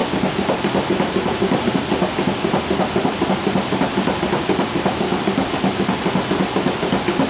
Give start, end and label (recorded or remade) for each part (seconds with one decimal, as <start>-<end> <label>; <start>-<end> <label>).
0.0-7.3 recorded